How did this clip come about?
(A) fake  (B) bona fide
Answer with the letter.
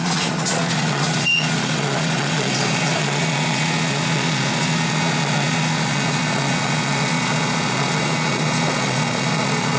A